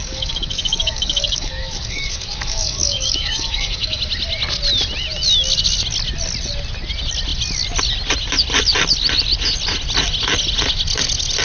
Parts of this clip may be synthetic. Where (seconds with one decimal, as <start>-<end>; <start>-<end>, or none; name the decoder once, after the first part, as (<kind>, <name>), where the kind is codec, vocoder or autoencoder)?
0.0-4.0 (codec, DAC)